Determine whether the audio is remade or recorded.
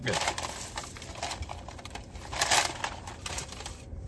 recorded